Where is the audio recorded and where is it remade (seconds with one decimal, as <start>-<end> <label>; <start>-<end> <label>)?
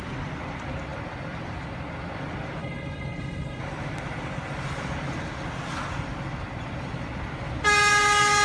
0.0-2.6 recorded; 2.6-3.6 remade; 3.6-8.4 recorded